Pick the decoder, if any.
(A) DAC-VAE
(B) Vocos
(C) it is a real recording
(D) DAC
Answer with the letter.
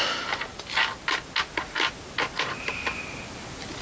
C